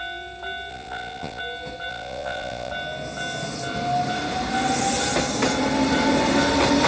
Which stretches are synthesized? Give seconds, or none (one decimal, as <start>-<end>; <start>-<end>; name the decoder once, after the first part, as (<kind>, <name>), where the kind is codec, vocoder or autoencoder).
0.7-1.4 (vocoder, Vocos); 1.9-2.7